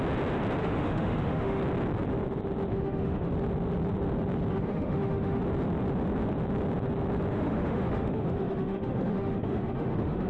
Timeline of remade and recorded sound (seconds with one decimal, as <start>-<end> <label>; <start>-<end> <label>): 0.0-0.6 recorded; 0.6-1.6 remade; 1.6-2.7 recorded; 2.7-3.3 remade; 3.3-4.5 recorded; 4.5-5.4 remade; 5.4-7.3 recorded; 7.3-10.3 remade